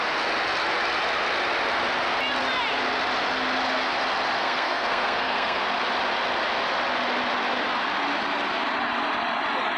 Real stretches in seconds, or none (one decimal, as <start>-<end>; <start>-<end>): 0.0-4.4; 5.6-9.8